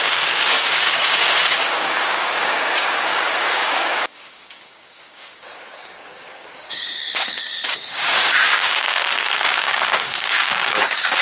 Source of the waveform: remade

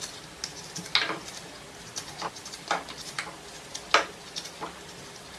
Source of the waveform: recorded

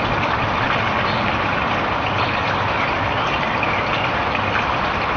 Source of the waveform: recorded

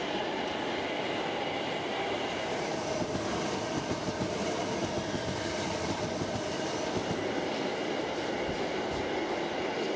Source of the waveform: recorded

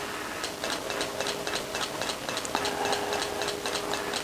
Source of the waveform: recorded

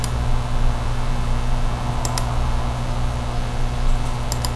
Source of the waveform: recorded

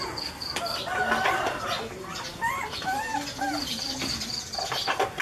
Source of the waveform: recorded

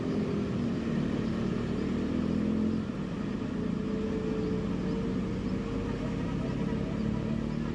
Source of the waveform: recorded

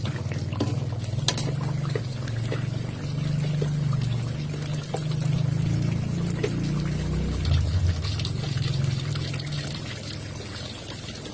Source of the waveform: recorded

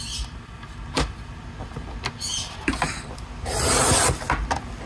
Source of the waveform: recorded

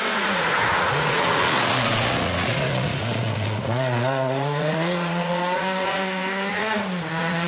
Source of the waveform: remade